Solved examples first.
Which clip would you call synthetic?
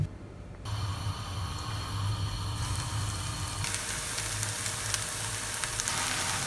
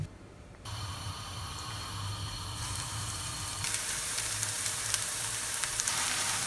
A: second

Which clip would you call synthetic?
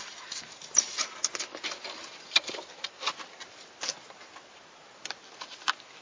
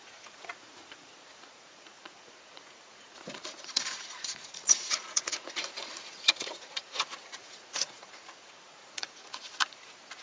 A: second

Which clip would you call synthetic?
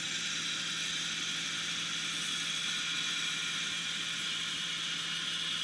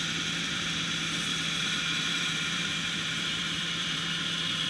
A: second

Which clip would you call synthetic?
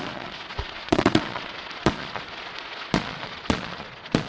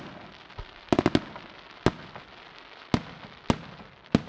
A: first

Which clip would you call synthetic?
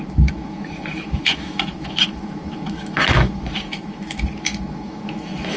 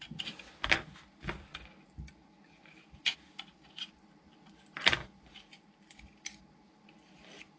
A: first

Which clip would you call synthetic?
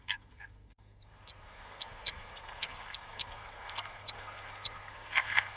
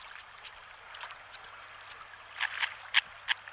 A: first